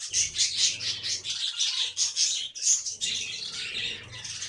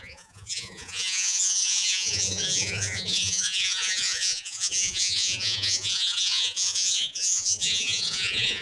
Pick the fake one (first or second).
second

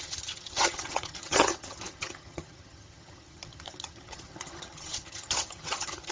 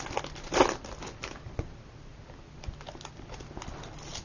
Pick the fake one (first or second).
first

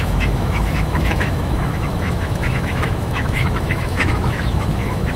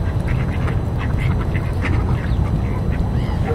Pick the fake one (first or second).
first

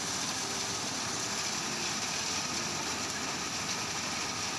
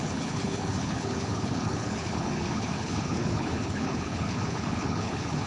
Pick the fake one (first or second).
second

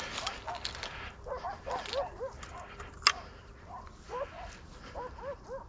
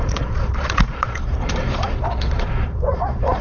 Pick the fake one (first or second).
second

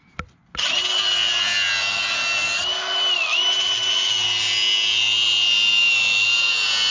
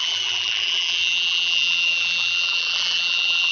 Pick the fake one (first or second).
second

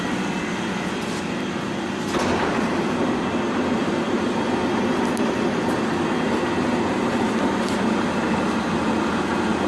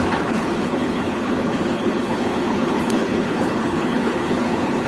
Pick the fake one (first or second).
second